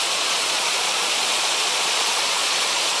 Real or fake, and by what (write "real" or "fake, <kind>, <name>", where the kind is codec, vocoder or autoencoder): fake, vocoder, Vocos